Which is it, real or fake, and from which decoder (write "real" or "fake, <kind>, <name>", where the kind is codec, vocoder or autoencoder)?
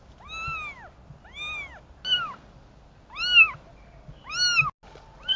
real